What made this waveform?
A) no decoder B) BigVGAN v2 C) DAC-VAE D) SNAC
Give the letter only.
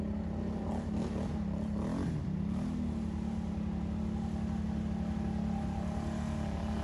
A